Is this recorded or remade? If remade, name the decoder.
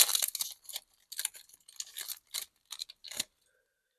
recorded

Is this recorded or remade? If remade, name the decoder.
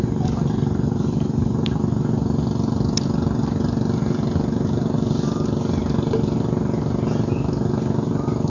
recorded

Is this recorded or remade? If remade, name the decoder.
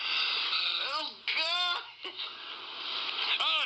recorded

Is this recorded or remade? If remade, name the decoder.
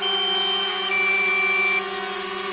recorded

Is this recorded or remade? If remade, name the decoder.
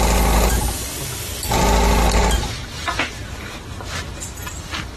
recorded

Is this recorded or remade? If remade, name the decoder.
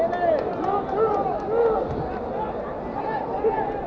recorded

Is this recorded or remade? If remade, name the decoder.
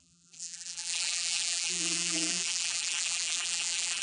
remade, vocoder, BigVGAN v2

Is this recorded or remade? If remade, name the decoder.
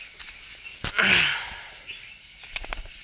recorded